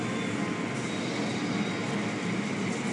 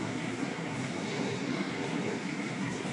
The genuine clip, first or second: first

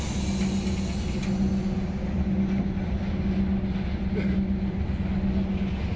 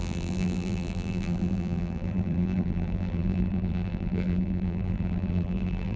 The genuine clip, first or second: first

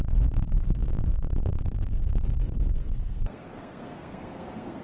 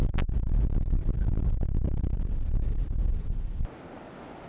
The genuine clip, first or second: second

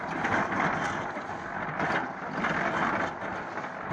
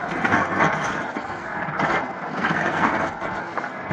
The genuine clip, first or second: first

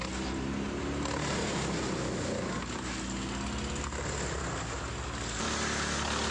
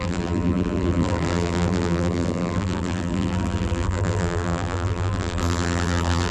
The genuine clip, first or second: first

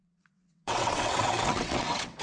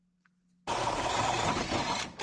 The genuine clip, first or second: second